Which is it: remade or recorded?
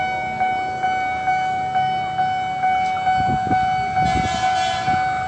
recorded